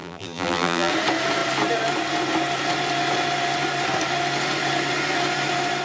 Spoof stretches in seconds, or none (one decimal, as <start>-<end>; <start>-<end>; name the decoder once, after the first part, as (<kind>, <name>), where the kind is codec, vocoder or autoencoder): 0.0-0.9 (vocoder, BigVGAN v2)